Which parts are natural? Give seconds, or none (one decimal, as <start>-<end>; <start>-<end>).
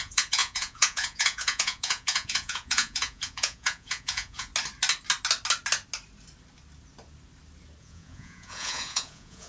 4.5-7.8